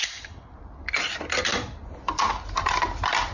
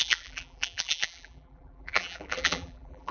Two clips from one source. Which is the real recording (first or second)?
first